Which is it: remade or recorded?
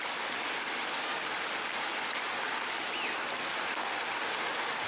recorded